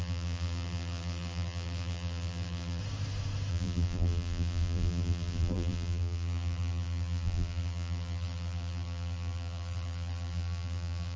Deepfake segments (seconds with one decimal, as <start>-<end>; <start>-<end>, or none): 0.0-2.8; 3.5-11.2